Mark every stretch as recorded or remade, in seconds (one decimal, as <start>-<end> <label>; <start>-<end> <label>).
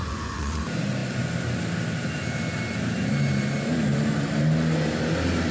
0.0-0.6 remade; 0.6-5.5 recorded